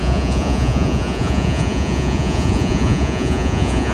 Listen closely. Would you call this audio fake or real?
fake